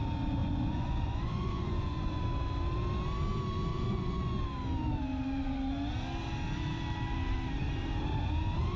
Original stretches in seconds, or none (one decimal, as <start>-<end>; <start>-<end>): 0.0-0.4; 2.2-3.7; 4.4-8.8